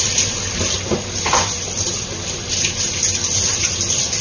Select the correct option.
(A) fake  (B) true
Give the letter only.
B